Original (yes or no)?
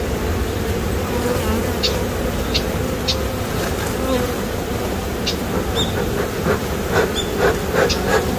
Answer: yes